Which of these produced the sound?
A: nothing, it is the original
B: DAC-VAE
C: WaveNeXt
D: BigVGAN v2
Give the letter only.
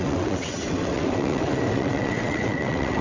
C